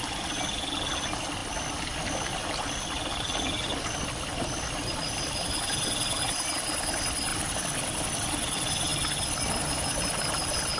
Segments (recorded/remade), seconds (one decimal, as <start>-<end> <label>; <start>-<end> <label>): 0.0-10.8 recorded